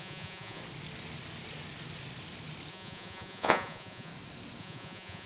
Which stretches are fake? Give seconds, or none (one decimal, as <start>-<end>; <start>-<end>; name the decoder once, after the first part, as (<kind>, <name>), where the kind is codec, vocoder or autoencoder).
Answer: 0.0-0.6 (vocoder, Vocos); 2.7-4.1; 4.6-5.3